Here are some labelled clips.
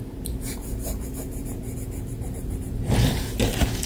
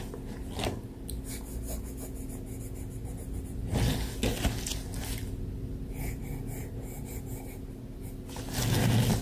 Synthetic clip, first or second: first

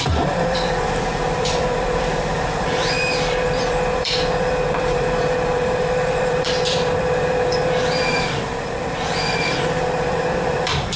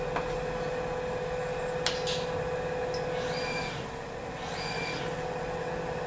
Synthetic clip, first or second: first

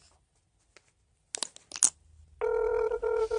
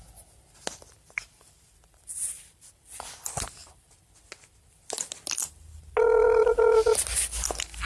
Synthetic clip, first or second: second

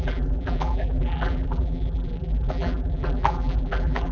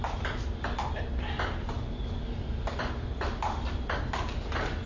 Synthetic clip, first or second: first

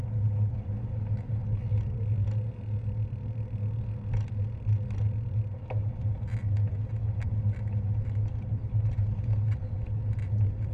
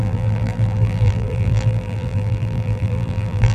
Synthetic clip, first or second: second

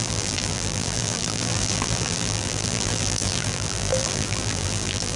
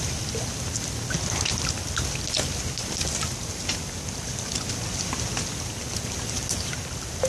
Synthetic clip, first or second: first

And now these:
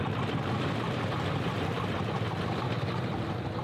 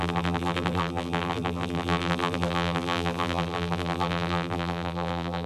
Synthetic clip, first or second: second